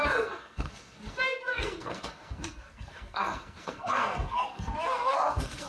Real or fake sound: fake